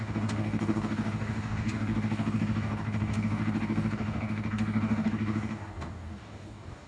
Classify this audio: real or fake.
fake